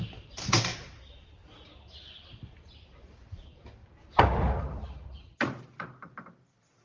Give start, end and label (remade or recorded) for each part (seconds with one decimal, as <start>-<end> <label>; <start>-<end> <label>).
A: 0.0-1.4 remade; 1.4-2.8 recorded; 2.8-3.8 remade; 3.8-4.6 recorded; 4.6-6.8 remade